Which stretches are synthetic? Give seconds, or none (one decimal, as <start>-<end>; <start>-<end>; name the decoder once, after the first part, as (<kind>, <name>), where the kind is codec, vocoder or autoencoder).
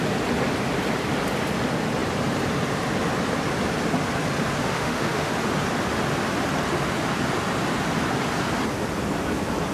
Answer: 4.6-5.3 (autoencoder, DAC-VAE)